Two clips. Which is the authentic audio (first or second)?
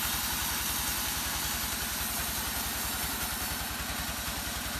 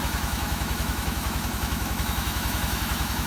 first